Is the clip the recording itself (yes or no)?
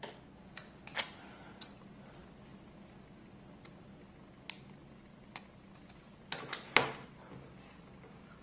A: yes